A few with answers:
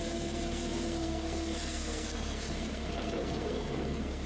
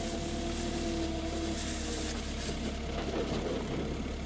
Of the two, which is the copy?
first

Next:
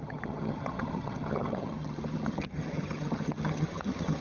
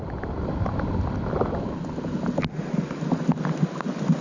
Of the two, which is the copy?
first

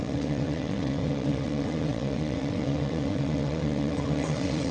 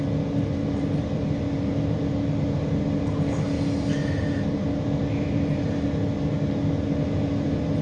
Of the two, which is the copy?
first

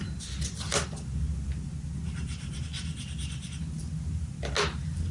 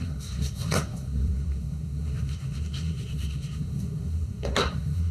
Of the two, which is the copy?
second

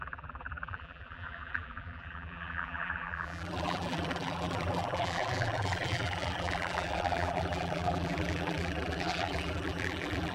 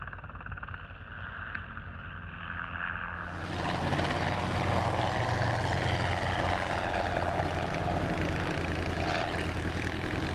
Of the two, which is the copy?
first